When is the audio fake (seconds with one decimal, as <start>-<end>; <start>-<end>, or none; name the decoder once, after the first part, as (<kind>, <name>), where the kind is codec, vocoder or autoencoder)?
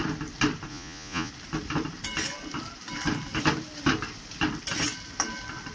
0.7-1.3 (vocoder, Vocos)